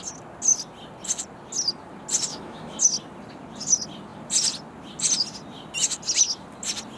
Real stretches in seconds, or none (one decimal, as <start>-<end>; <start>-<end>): 0.0-2.3; 2.8-7.0